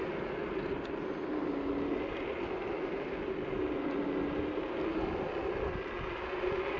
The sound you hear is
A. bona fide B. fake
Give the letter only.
A